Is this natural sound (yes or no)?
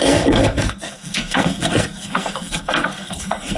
no